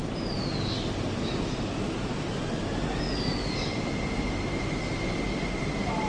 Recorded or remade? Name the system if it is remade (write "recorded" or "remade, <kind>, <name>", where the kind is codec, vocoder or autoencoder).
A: recorded